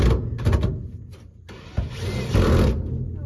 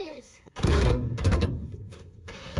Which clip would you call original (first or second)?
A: first